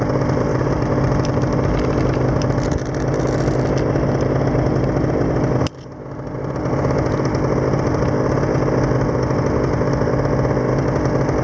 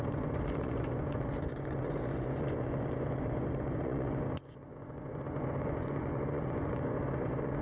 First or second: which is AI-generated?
second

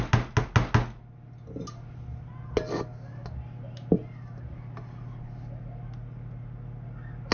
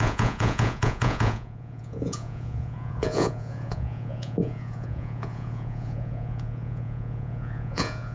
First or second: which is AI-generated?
second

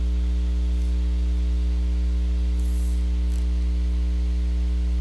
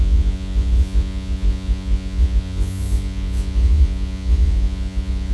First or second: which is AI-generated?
second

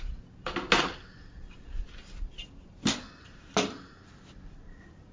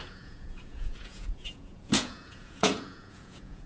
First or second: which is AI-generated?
second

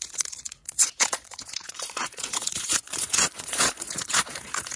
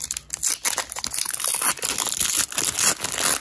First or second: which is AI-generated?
first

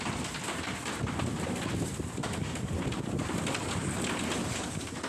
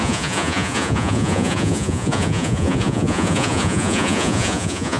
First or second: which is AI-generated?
second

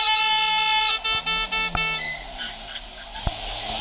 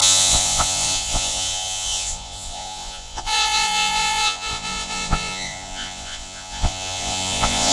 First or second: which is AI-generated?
second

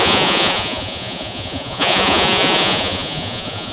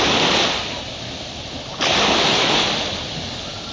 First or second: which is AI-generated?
first